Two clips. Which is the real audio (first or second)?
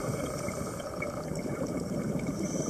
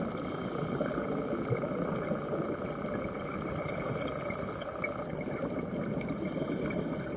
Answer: second